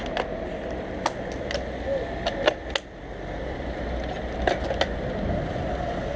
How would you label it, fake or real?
real